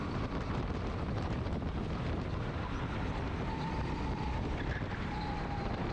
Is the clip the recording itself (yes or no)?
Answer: no